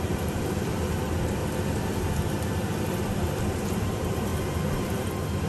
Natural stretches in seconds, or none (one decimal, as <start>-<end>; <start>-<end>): 1.4-3.4; 4.3-4.9